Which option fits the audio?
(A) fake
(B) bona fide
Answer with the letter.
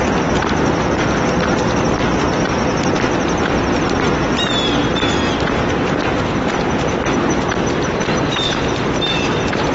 B